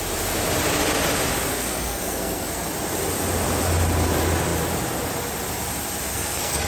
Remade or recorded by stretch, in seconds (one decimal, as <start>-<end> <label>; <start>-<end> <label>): 0.0-1.5 recorded; 1.5-2.7 remade; 2.7-6.1 recorded; 6.1-6.7 remade